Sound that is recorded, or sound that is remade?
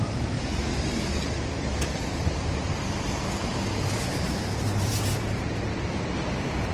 remade